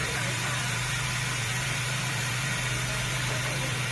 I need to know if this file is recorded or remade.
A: remade